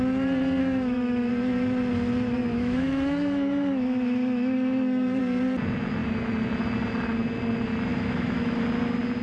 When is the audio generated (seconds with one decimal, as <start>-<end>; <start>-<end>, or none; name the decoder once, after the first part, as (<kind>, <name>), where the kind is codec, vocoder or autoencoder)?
0.6-1.3 (autoencoder, DAC-VAE); 2.5-5.2; 7.9-8.6